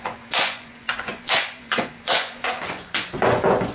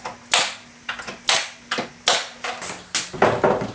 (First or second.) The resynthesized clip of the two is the first